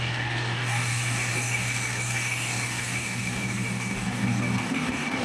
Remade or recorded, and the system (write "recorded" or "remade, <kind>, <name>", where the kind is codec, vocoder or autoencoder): remade, codec, DAC